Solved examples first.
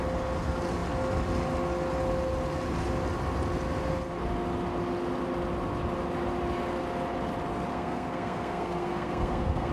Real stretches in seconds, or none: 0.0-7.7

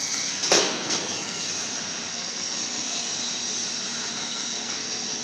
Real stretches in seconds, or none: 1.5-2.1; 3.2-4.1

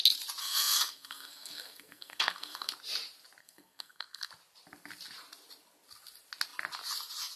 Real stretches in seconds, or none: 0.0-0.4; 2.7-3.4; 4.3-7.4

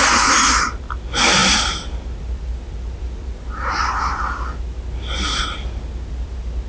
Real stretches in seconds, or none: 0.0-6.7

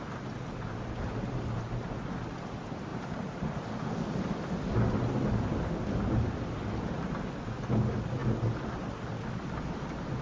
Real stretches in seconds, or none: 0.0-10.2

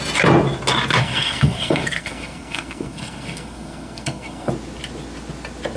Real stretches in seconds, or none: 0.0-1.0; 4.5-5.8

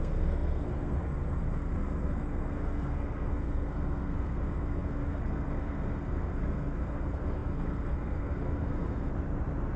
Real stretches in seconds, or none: 9.1-9.8

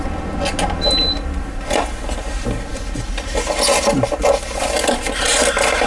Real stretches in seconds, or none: 0.0-5.9